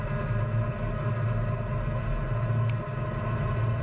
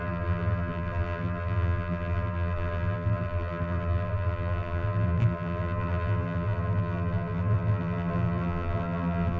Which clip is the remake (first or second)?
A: second